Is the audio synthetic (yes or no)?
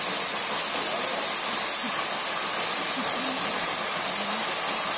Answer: no